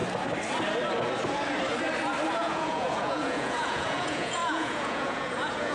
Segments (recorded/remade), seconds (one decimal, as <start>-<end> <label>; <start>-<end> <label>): 0.0-2.3 recorded; 2.3-5.7 remade